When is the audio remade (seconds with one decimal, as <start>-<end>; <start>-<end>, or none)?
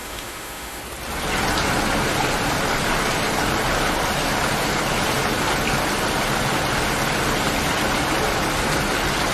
0.0-0.8